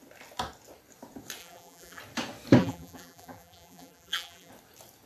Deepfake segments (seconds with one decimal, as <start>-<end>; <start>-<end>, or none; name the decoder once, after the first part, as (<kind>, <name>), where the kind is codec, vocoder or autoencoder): 1.4-2.0 (vocoder, BigVGAN v2); 2.6-4.5